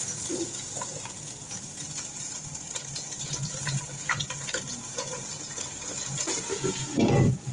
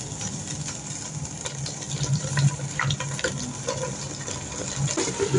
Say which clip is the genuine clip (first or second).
second